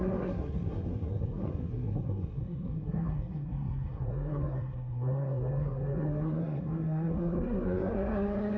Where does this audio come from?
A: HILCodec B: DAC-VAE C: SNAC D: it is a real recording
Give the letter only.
C